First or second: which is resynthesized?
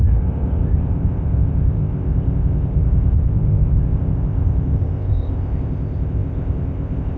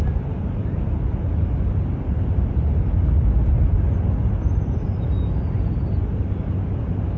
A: first